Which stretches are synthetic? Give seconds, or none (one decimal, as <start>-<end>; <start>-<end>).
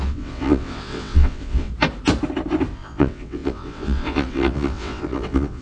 0.0-1.7; 2.7-5.6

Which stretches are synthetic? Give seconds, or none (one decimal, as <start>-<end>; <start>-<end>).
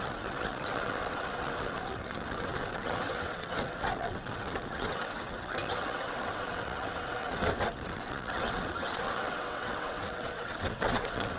0.0-11.4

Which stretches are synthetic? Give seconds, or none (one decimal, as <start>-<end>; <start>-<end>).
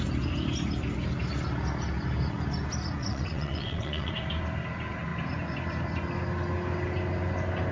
3.0-4.1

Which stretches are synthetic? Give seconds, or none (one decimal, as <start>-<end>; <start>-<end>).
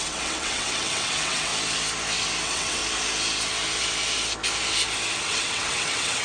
0.0-1.5; 2.4-2.8; 5.2-6.2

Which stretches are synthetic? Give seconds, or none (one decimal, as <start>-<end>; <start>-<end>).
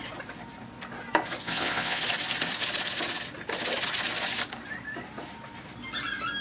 1.4-2.0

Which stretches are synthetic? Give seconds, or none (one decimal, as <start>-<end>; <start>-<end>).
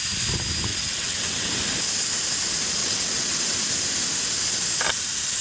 0.7-1.5; 2.8-3.4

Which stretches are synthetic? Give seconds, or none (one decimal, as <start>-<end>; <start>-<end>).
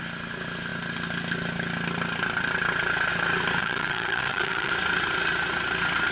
3.6-4.7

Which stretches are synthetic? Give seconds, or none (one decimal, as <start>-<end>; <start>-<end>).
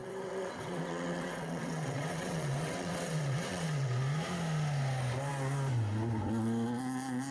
0.0-4.0